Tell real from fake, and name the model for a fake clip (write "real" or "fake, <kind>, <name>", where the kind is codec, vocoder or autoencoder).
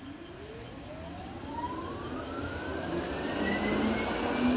real